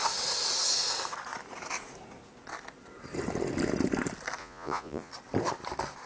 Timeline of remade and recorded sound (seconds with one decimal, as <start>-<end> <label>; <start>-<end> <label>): 0.0-4.4 recorded; 4.4-5.1 remade; 5.1-6.1 recorded